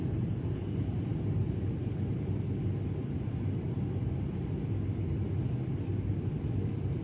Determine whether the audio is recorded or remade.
recorded